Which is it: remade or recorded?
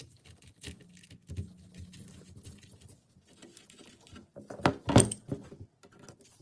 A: recorded